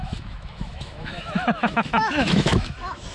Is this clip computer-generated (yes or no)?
yes